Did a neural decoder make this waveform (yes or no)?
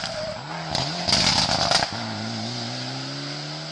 no